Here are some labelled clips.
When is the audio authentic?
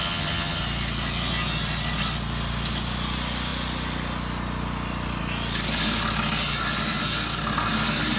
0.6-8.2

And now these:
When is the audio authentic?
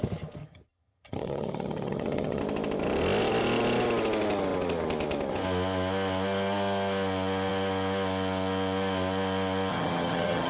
0.0-0.4; 2.4-9.7